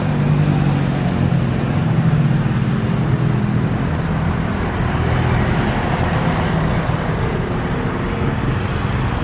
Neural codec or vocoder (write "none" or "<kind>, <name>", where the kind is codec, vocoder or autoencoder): none